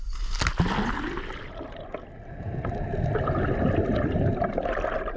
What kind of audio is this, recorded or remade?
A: recorded